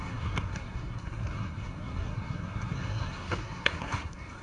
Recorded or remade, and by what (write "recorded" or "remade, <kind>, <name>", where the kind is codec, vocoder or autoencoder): remade, codec, SNAC